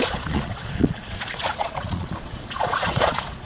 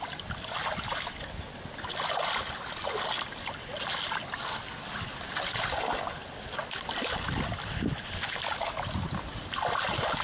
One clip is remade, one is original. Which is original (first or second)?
second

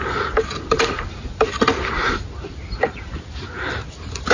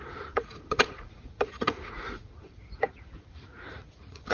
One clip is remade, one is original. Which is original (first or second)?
first